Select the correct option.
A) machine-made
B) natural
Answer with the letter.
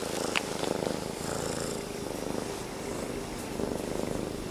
B